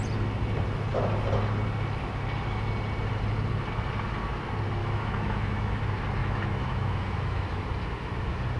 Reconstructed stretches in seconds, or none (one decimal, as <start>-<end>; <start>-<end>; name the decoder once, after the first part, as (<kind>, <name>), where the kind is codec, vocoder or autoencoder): 4.8-5.8 (autoencoder, DAC-VAE); 6.2-7.6